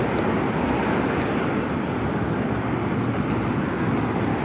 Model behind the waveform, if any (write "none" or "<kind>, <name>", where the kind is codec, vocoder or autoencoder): none